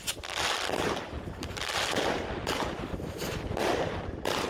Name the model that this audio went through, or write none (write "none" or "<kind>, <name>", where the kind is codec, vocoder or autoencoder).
none